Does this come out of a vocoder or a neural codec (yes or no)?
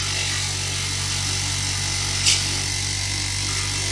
no